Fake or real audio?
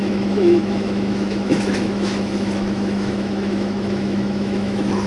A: fake